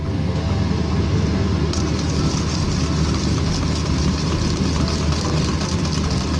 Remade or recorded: recorded